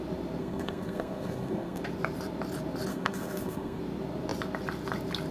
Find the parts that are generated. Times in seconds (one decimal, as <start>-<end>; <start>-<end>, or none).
0.4-1.8; 2.9-3.8